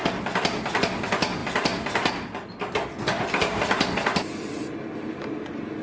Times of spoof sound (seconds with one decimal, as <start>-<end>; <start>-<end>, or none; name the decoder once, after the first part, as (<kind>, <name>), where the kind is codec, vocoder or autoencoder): none

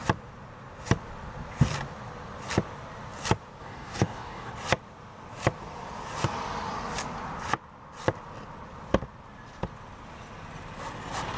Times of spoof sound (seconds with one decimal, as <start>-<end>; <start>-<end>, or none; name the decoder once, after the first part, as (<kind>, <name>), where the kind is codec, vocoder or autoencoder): 3.6-4.5 (codec, DAC)